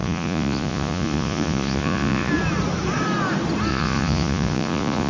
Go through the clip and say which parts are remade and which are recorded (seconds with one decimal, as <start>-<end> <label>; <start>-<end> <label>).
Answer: 0.0-2.3 remade; 2.3-3.7 recorded; 3.7-5.1 remade